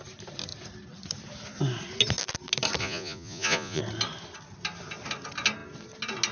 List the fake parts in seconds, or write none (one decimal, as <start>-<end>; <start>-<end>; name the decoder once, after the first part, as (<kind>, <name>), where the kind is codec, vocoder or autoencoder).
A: 2.8-3.8 (vocoder, Vocos)